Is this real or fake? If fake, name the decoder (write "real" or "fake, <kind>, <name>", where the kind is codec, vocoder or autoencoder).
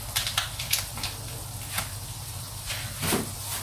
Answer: real